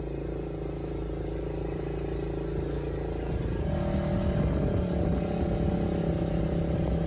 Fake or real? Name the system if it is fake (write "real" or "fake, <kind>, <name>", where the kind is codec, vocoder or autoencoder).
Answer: real